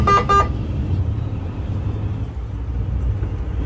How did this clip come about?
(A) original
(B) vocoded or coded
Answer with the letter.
A